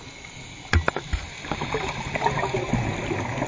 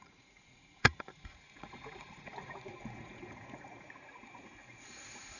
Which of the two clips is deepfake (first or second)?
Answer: second